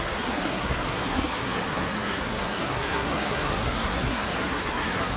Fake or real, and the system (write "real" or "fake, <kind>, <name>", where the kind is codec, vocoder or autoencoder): fake, codec, SNAC